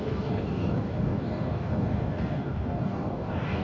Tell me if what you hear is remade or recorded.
remade